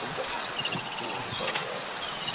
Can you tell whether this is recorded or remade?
remade